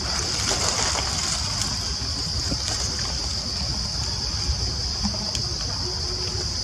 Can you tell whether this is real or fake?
real